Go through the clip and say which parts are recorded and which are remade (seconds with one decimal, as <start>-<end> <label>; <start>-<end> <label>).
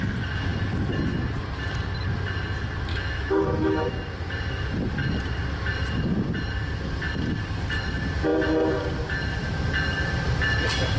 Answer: 0.0-2.9 recorded; 2.9-3.9 remade; 3.9-11.0 recorded